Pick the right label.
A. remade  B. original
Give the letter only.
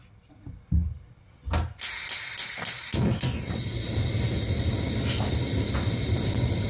B